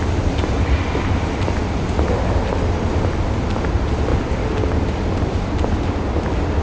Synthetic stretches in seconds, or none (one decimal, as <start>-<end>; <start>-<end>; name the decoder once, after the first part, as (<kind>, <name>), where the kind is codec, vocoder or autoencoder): 0.0-4.1 (vocoder, BigVGAN v2); 5.1-6.6